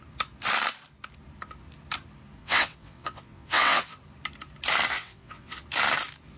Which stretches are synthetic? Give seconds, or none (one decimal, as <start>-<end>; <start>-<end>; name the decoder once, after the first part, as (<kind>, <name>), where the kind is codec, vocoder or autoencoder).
2.4-4.0 (vocoder, WaveNeXt); 4.9-5.6